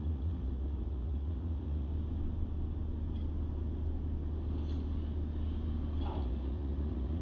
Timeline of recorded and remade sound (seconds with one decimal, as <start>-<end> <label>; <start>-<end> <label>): 0.0-1.9 remade; 1.9-6.2 recorded; 6.2-7.2 remade